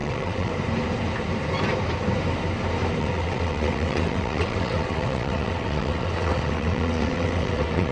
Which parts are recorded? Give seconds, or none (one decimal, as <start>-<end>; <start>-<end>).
0.5-3.0